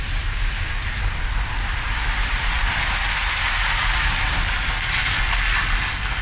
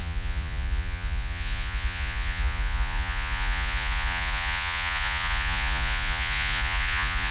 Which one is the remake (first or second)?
second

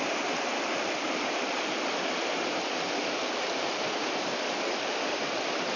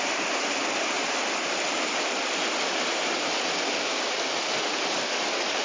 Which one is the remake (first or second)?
first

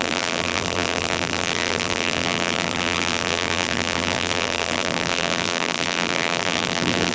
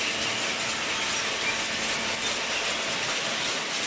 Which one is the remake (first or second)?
first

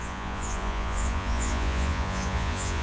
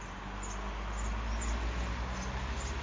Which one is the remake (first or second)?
first